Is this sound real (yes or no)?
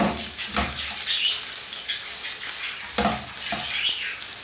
yes